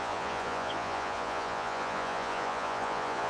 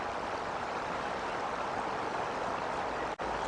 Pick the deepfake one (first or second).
first